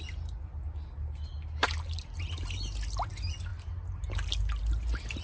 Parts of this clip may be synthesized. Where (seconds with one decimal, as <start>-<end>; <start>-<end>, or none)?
none